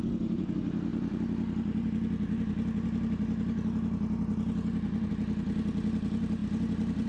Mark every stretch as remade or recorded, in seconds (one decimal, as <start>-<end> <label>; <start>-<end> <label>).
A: 0.0-7.1 recorded